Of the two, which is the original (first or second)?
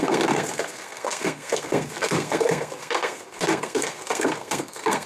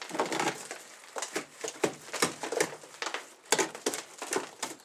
second